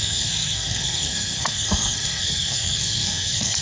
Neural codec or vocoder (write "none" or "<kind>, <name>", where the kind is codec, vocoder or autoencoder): codec, SNAC